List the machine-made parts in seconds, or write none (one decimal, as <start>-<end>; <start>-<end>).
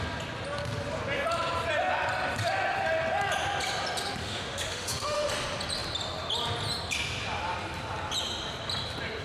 4.2-5.3